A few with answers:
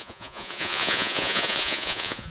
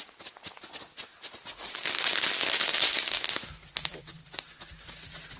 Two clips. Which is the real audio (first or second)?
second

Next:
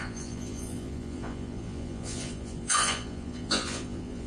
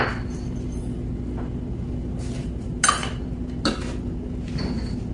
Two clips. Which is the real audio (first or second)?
second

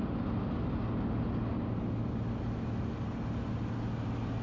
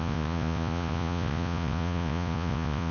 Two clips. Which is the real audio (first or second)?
first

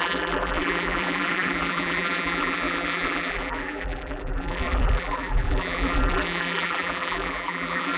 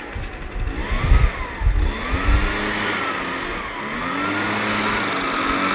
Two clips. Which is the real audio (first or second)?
second